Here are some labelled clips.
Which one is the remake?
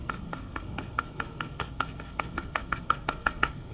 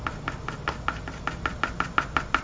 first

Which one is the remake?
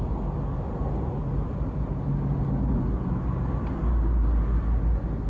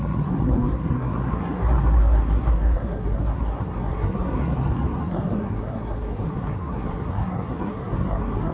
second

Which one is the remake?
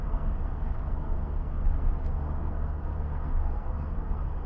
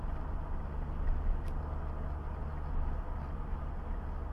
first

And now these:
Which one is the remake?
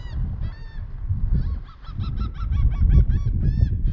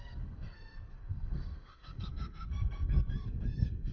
second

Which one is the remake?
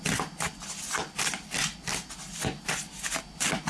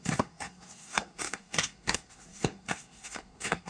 second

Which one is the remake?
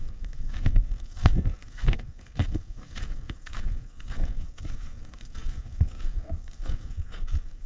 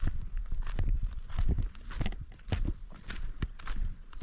first